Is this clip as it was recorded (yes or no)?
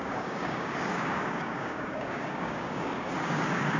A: no